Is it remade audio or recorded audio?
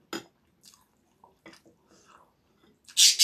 recorded